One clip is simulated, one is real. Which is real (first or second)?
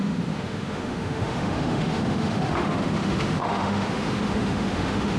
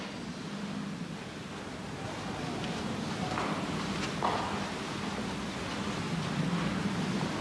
second